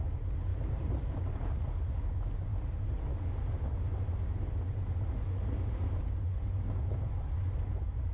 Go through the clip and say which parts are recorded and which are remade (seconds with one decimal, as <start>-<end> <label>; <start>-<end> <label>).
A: 0.0-0.5 recorded; 0.5-1.2 remade; 1.2-8.1 recorded